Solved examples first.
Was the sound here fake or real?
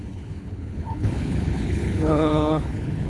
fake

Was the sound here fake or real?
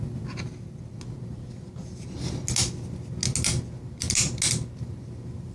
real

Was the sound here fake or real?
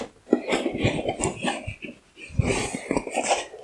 real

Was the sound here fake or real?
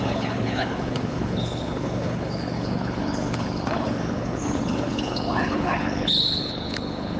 fake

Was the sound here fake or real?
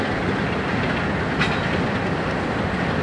real